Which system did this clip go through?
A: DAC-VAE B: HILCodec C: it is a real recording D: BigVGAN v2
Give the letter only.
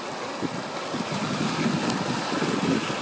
C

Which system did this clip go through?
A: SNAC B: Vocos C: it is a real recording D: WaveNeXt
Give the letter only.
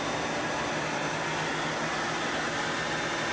C